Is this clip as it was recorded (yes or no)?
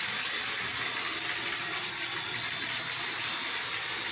yes